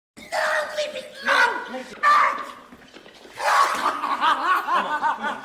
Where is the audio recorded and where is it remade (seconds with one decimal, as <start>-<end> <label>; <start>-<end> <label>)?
0.0-5.4 recorded